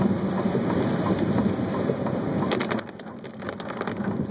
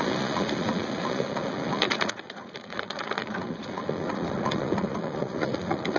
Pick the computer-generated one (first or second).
second